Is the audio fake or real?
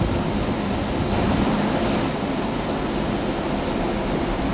real